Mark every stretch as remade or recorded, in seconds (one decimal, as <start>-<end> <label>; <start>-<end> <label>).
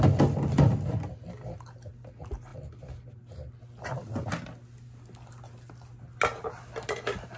0.0-7.4 recorded